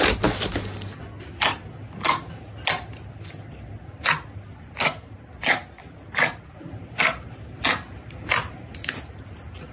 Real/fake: real